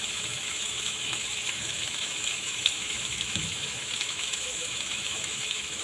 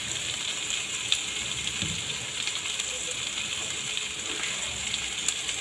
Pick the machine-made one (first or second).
first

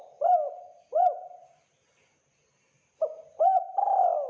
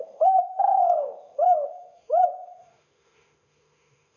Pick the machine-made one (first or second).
second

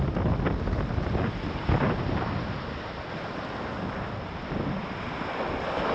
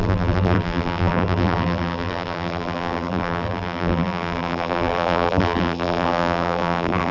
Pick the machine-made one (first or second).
second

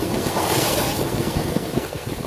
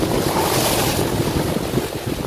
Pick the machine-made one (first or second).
first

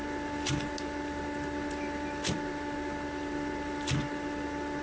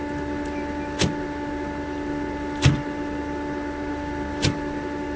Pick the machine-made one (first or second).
first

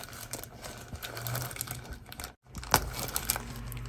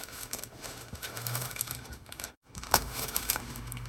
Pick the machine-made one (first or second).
second